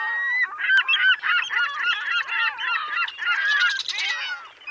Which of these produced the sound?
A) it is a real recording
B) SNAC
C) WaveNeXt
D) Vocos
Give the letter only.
A